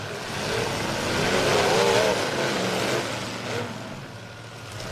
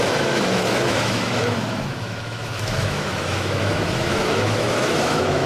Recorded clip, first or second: first